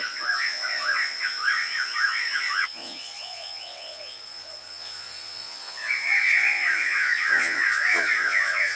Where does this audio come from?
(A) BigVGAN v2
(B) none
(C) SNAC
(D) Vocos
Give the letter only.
D